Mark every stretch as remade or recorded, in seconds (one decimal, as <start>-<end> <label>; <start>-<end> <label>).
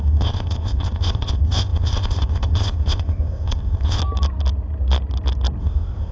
0.0-4.0 remade; 4.0-5.6 recorded; 5.6-6.1 remade